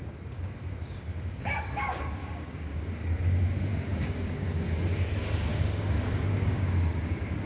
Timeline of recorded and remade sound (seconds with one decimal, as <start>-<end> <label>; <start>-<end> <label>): 0.0-7.5 remade